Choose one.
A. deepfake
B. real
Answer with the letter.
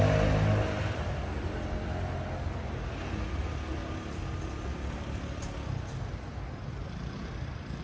B